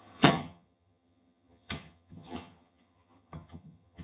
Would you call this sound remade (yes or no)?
yes